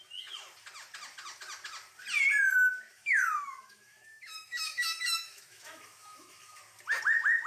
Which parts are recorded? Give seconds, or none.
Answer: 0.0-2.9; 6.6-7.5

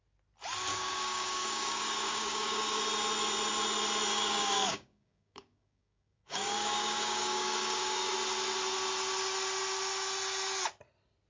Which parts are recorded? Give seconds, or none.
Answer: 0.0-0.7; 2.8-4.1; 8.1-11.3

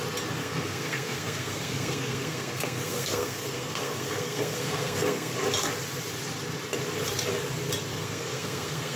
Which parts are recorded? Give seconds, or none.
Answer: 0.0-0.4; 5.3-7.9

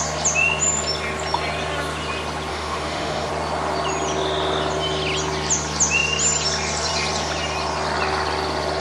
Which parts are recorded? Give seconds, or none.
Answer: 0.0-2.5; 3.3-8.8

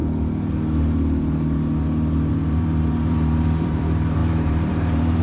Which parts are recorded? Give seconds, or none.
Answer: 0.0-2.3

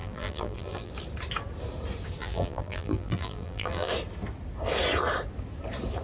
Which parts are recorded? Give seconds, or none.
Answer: 0.9-2.2; 3.9-6.0

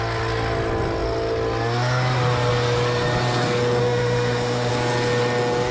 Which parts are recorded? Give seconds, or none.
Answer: 0.0-3.8; 4.7-5.7

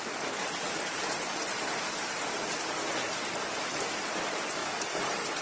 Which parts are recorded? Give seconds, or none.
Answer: 2.8-3.8; 4.6-5.4